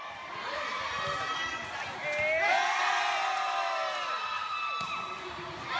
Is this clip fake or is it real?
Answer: real